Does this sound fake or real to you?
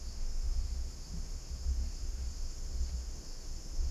fake